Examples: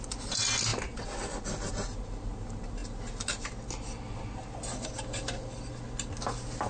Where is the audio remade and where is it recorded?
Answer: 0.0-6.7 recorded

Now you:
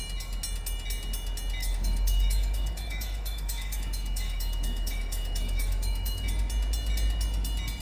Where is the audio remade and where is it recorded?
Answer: 0.0-1.6 recorded; 1.6-6.3 remade; 6.3-7.8 recorded

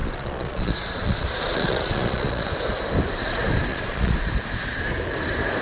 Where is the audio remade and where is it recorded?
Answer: 0.0-2.5 remade; 2.5-3.7 recorded; 3.7-4.3 remade; 4.3-5.6 recorded

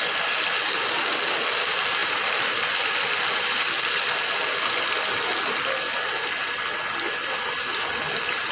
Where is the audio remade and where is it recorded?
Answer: 0.0-8.5 recorded

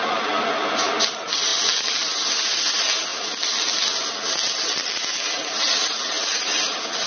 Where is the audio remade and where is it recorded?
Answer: 0.0-7.1 recorded